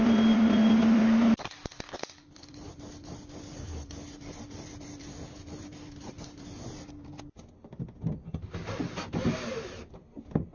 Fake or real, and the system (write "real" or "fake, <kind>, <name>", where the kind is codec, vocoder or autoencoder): fake, vocoder, BigVGAN v2